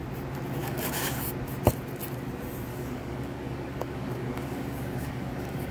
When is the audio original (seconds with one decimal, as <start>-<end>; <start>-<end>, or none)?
0.0-0.6; 1.3-2.7